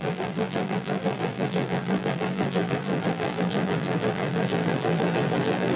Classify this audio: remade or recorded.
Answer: remade